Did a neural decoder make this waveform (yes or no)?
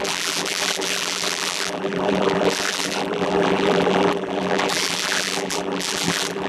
yes